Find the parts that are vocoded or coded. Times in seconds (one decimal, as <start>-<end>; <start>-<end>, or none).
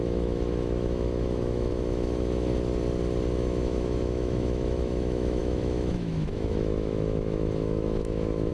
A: 0.0-2.5; 3.4-8.5